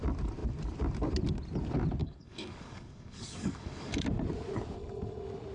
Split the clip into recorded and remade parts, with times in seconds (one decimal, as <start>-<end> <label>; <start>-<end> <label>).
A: 0.0-2.0 recorded; 2.0-4.0 remade; 4.0-5.5 recorded